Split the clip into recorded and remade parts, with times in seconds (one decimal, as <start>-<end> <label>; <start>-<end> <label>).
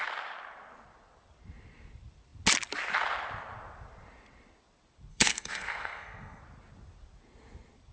0.0-5.1 recorded; 5.1-6.4 remade; 6.4-7.9 recorded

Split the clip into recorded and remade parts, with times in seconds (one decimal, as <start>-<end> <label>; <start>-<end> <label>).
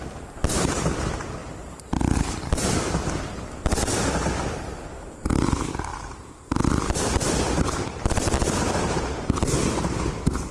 0.0-10.5 recorded